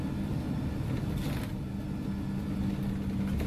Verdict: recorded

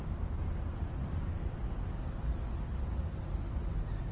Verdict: recorded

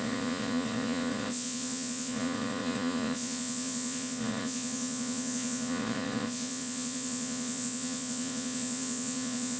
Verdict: remade